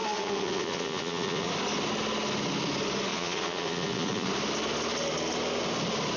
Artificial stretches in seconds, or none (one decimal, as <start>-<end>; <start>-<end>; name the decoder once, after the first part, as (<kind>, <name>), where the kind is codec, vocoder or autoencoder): 0.0-1.5 (vocoder, Vocos); 3.1-4.3